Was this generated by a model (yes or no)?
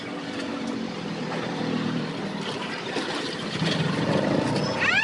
yes